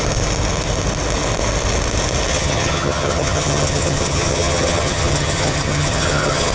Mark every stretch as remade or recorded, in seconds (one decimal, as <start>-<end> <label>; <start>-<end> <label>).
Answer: 0.0-2.3 recorded; 2.3-6.5 remade